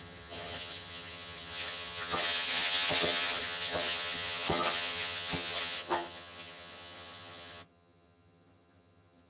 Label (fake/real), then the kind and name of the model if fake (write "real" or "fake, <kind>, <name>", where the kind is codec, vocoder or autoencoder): fake, vocoder, HiFi-GAN